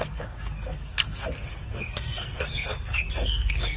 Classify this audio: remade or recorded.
remade